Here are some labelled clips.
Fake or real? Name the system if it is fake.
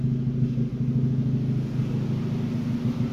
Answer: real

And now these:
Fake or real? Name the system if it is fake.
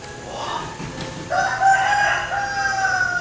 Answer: real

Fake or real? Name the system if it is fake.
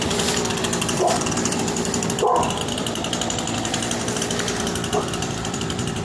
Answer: fake, vocoder, BigVGAN v2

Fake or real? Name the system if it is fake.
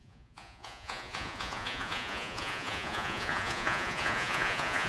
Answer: fake, vocoder, Vocos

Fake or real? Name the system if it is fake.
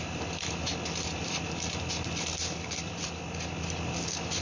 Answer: real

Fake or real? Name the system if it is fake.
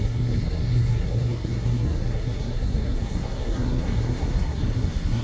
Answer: fake, codec, SNAC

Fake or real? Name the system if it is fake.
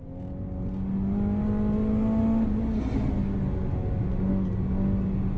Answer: real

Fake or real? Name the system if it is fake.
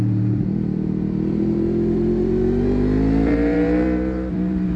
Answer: fake, vocoder, BigVGAN v2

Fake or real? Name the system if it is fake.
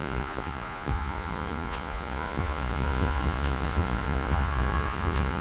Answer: fake, vocoder, Vocos